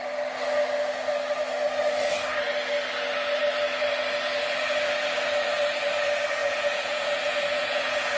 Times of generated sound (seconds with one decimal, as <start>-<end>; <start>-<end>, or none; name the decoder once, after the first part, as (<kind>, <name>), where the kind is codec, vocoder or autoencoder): 6.4-8.2 (vocoder, Vocos)